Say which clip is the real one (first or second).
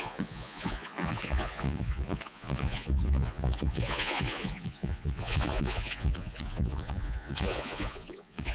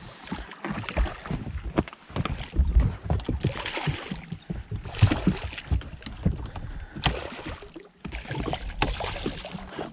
second